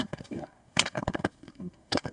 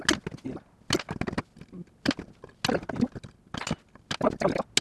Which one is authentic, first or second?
second